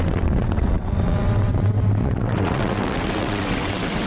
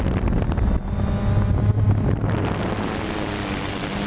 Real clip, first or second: second